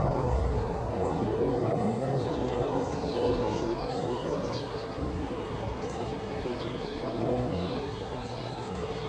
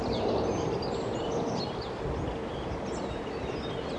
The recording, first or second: second